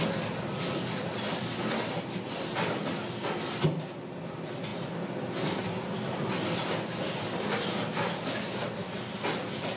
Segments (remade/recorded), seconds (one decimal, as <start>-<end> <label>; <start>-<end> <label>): 0.0-9.8 recorded